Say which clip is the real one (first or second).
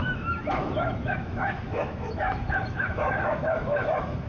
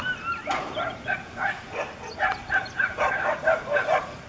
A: second